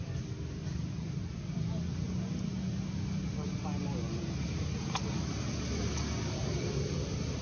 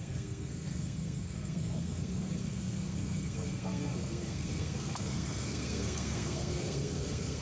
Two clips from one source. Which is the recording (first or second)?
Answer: first